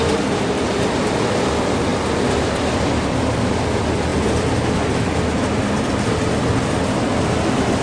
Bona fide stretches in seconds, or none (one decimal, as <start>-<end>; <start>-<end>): 0.0-4.1; 5.1-7.8